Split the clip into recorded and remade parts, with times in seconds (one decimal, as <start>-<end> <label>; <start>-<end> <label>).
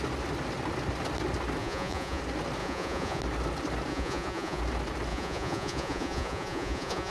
0.0-1.6 recorded; 1.6-2.2 remade; 2.2-2.6 recorded; 2.6-3.2 remade; 3.2-3.9 recorded; 3.9-4.6 remade; 4.6-5.1 recorded; 5.1-7.1 remade